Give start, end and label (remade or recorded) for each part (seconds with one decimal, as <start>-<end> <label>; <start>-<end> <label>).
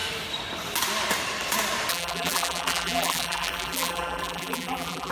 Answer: 0.0-1.9 recorded; 1.9-5.1 remade